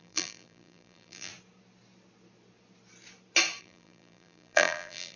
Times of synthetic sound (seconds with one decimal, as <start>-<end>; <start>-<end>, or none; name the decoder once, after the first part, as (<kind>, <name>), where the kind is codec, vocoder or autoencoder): 0.0-1.3 (vocoder, BigVGAN v2); 3.6-5.2